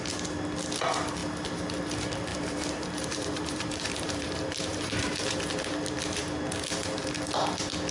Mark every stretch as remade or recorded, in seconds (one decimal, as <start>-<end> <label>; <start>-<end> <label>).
0.0-2.3 recorded; 2.3-5.4 remade; 5.4-7.9 recorded